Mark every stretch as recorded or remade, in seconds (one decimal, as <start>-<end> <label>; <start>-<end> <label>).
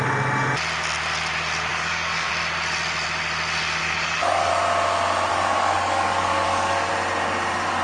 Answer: 0.0-1.7 recorded; 1.7-2.3 remade; 2.3-3.8 recorded; 3.8-4.5 remade; 4.5-5.3 recorded; 5.3-6.9 remade; 6.9-7.8 recorded